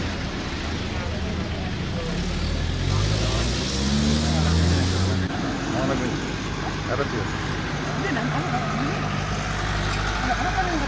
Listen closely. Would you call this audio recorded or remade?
recorded